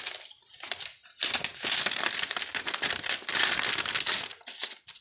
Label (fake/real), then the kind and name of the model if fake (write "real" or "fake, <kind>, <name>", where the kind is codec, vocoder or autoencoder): real